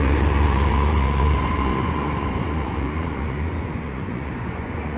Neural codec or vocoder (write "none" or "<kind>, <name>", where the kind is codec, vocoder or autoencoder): vocoder, Vocos